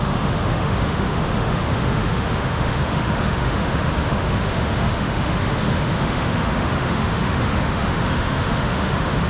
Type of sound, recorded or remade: remade